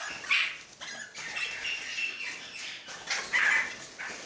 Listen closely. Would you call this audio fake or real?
real